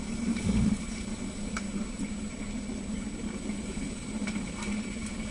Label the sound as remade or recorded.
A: recorded